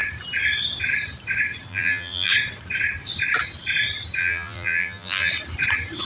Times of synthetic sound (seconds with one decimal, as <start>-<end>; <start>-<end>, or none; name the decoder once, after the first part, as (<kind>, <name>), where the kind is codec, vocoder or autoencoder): 1.7-2.3 (vocoder, BigVGAN v2); 4.2-5.3